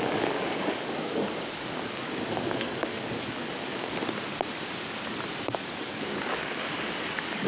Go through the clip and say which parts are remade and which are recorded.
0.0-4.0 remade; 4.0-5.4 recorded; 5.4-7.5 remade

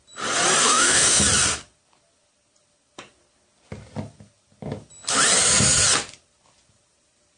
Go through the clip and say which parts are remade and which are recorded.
0.0-0.6 recorded; 0.6-1.2 remade; 1.2-7.4 recorded

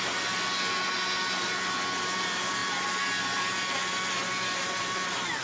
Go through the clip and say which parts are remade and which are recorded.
0.0-5.4 recorded

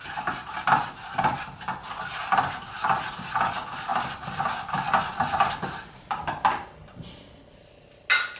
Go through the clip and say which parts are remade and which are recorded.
0.0-8.4 recorded

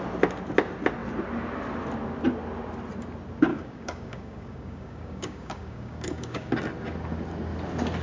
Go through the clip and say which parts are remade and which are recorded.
0.0-3.5 recorded; 3.5-6.5 remade; 6.5-8.0 recorded

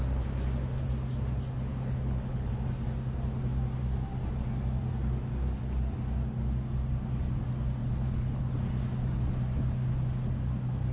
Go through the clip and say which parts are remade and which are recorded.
0.0-1.7 recorded; 1.7-2.5 remade; 2.5-7.8 recorded; 7.8-8.4 remade; 8.4-10.9 recorded

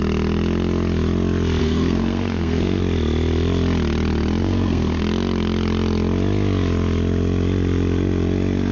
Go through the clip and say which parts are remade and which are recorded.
0.0-1.6 recorded; 1.6-2.8 remade; 2.8-4.4 recorded; 4.4-5.0 remade; 5.0-8.7 recorded